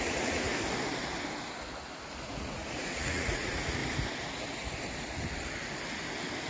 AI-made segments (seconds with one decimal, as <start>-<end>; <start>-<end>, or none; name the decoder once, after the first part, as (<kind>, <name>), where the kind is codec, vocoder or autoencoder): 0.0-0.5 (vocoder, Vocos); 2.2-3.8